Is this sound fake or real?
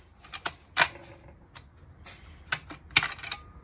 real